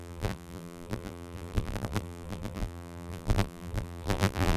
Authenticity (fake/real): fake